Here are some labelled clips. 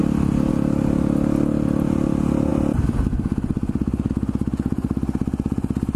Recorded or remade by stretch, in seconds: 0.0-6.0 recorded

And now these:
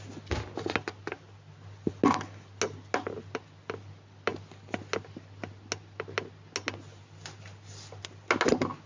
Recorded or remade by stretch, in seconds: 0.0-8.9 recorded

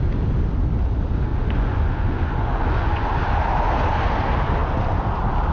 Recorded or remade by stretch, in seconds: 0.0-1.3 recorded; 1.3-3.1 remade; 3.1-5.5 recorded